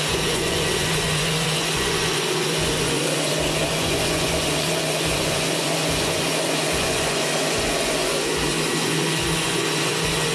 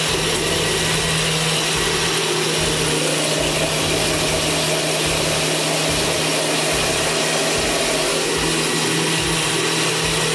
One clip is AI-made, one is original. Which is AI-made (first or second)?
first